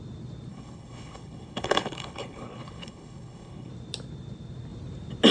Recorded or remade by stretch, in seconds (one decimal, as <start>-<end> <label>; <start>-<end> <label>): 0.0-0.5 recorded; 0.5-3.7 remade; 3.7-5.3 recorded